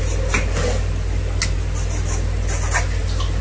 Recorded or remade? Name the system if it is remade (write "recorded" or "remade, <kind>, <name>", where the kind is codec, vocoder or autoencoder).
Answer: recorded